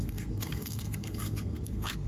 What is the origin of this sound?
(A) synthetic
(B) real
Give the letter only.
A